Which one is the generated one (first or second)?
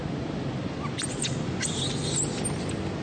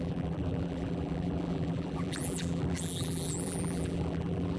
second